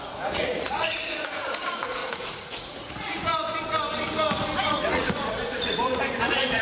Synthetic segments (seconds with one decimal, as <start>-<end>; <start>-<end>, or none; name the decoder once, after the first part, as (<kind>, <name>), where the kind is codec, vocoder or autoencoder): 0.0-3.3 (vocoder, Vocos); 4.6-6.6